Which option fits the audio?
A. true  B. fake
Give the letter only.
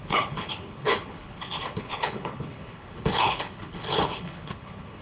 B